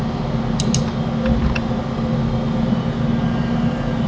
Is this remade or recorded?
recorded